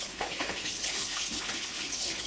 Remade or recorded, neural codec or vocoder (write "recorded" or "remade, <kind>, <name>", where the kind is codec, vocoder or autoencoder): remade, codec, HILCodec